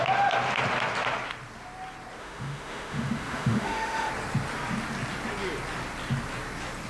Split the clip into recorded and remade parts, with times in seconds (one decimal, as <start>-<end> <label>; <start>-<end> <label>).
0.0-2.2 recorded; 2.2-4.1 remade; 4.1-6.9 recorded